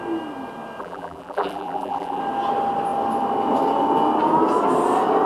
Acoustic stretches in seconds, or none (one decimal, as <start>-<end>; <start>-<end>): 0.0-0.8; 2.2-5.3